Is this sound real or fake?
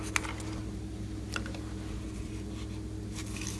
real